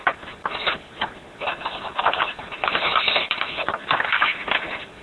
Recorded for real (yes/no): no